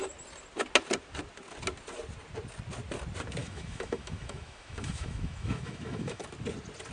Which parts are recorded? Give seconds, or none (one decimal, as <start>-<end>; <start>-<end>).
0.0-3.4; 6.2-6.9